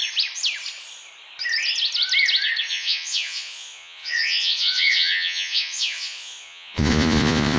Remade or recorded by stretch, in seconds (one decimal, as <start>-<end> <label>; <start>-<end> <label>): 0.0-2.7 recorded; 2.7-7.6 remade